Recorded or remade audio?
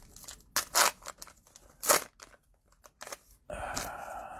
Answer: recorded